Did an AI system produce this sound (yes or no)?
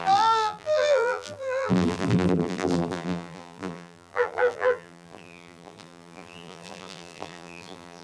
yes